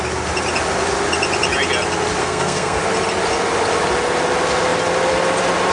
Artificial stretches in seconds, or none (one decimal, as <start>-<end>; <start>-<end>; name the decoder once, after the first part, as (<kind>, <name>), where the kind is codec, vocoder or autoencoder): 2.2-2.8 (codec, SNAC)